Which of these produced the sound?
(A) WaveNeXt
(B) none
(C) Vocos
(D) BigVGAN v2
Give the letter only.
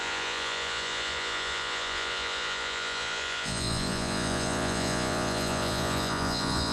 C